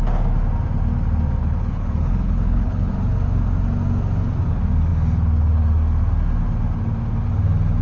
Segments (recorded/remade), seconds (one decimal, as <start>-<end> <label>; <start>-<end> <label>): 0.0-1.4 recorded; 1.4-2.9 remade; 2.9-7.8 recorded